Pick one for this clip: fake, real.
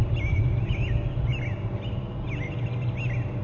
real